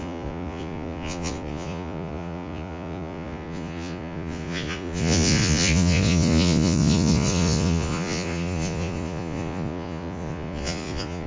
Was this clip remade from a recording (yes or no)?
yes